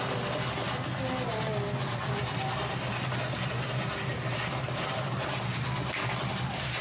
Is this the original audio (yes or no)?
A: yes